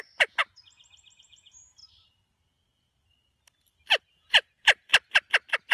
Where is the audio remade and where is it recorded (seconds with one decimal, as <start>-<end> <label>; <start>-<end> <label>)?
0.0-0.4 remade; 0.4-1.2 recorded; 1.2-1.8 remade; 1.8-4.0 recorded; 4.0-4.9 remade; 4.9-5.7 recorded